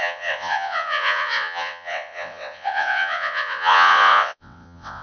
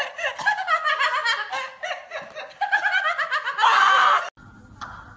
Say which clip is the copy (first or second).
first